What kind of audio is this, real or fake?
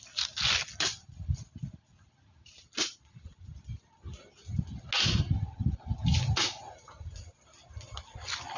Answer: real